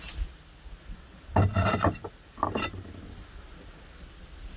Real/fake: real